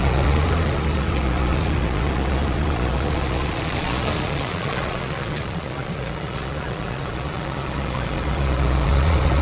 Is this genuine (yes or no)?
no